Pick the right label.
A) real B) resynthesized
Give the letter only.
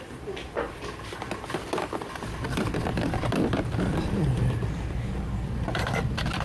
B